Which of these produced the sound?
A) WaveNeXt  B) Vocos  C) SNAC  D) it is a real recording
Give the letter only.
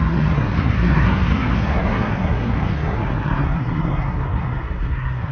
C